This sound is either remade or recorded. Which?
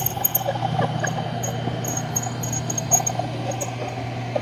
recorded